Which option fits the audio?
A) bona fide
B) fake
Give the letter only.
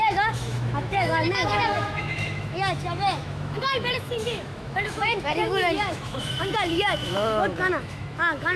B